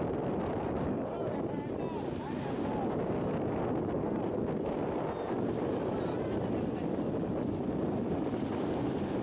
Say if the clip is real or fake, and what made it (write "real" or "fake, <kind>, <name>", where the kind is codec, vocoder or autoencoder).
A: real